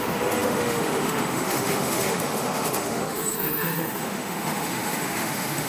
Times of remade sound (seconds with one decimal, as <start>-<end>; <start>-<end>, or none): 0.0-5.7